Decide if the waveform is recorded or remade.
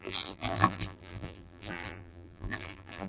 remade